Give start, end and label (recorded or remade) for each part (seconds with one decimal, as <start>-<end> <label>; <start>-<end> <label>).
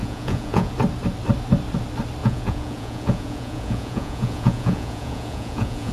0.0-0.7 remade; 0.7-2.2 recorded; 2.2-5.9 remade